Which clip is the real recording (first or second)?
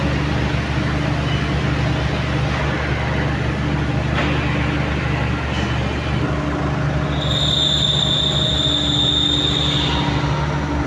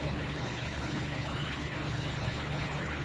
first